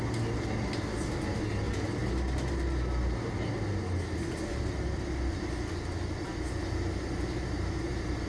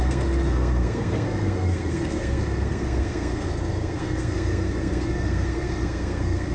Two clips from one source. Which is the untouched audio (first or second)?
first